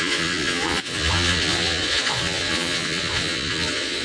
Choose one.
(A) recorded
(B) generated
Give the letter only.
B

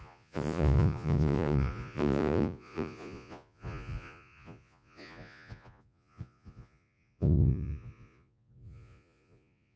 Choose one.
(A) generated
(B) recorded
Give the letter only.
A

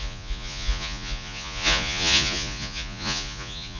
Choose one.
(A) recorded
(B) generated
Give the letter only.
B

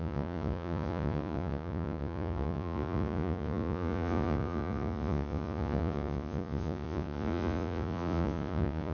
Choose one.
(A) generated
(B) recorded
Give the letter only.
A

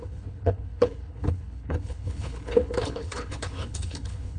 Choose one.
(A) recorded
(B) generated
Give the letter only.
B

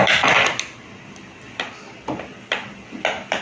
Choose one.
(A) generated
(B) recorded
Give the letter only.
A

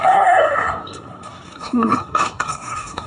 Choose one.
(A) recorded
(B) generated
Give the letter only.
B